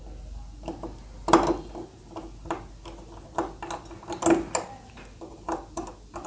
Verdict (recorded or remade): recorded